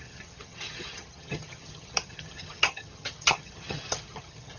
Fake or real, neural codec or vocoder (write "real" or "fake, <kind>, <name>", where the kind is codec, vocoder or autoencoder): fake, vocoder, HiFi-GAN